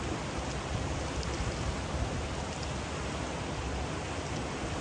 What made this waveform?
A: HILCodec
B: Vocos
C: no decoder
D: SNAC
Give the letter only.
C